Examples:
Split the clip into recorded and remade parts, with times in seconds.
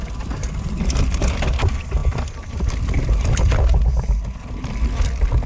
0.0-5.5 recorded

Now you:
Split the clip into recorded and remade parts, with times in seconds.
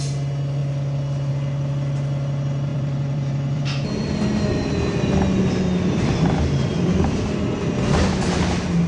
0.0-2.7 recorded; 2.7-3.6 remade; 3.6-5.7 recorded; 5.7-7.2 remade; 7.2-8.9 recorded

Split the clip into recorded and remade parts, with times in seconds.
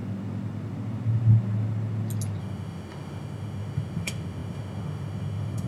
0.0-2.4 recorded; 2.4-5.7 remade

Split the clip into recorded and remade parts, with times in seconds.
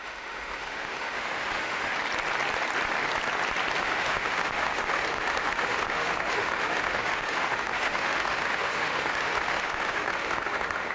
0.0-1.9 remade; 1.9-3.8 recorded; 3.8-10.9 remade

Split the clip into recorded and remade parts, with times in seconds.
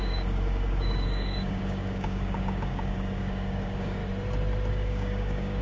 0.0-4.0 remade; 4.0-4.7 recorded; 4.7-5.6 remade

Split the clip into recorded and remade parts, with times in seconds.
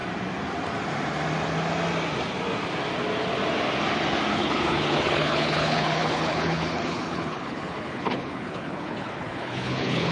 0.0-4.3 recorded; 4.3-10.1 remade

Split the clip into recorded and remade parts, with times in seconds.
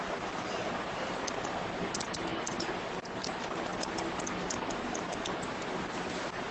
0.0-6.5 recorded